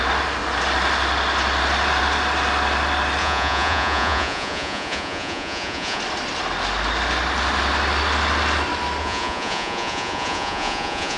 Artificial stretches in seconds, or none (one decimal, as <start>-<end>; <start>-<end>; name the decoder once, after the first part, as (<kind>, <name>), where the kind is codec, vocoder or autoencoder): 3.2-6.0 (vocoder, Vocos); 9.0-11.2